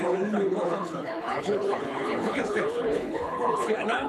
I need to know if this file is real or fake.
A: fake